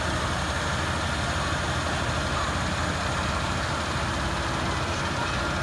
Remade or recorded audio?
recorded